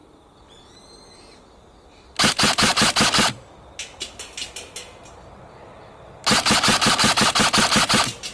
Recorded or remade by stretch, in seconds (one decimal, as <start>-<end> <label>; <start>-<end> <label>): 0.0-8.3 recorded